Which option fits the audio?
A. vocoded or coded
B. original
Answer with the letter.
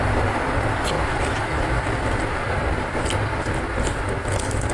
B